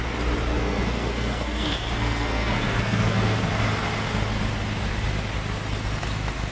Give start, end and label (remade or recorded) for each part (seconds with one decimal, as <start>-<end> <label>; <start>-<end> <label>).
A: 0.0-0.5 recorded; 0.5-3.5 remade; 3.5-6.5 recorded